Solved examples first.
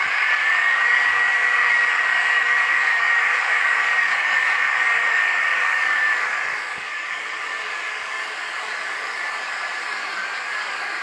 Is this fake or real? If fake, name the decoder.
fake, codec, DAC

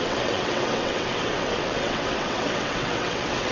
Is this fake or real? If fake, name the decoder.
fake, vocoder, WaveNeXt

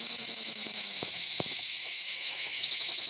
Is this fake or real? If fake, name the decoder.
fake, autoencoder, DAC-VAE